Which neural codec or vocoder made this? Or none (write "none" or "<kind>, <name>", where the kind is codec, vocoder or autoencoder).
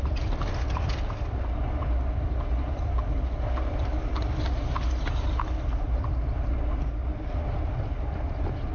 none